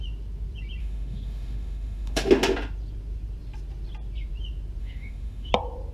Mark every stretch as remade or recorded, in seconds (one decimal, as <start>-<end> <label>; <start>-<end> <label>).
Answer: 0.0-0.8 recorded; 0.8-2.3 remade; 2.3-4.8 recorded; 4.8-5.5 remade; 5.5-5.9 recorded

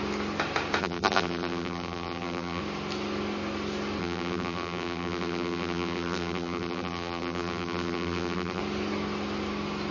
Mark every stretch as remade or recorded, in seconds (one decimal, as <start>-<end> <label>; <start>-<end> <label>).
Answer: 0.0-0.8 recorded; 0.8-2.6 remade; 2.6-4.0 recorded; 4.0-8.6 remade; 8.6-9.9 recorded

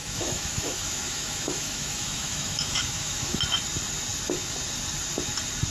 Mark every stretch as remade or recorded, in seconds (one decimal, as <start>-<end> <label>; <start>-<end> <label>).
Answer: 0.0-3.4 remade; 3.4-5.7 recorded

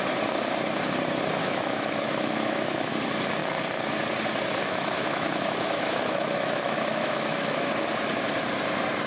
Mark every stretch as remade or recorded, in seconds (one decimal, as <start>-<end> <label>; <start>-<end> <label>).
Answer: 0.0-1.4 recorded; 1.4-2.9 remade; 2.9-4.6 recorded; 4.6-7.7 remade; 7.7-9.1 recorded

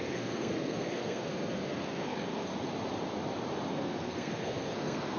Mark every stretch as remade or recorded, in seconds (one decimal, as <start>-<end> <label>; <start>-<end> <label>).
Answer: 0.0-2.5 remade; 2.5-3.7 recorded; 3.7-5.2 remade